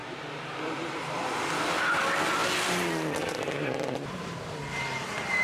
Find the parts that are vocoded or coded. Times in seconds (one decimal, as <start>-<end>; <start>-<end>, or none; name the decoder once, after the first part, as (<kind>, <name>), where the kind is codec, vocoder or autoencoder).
0.0-1.2 (vocoder, BigVGAN v2)